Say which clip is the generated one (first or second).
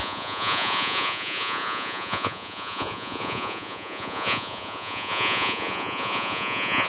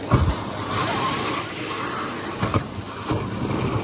first